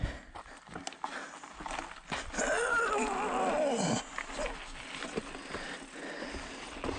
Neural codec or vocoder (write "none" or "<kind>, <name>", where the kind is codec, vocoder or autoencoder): none